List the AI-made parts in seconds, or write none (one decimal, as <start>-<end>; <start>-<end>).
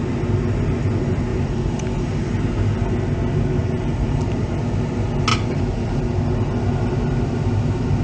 1.3-2.2; 3.6-4.6; 5.3-6.0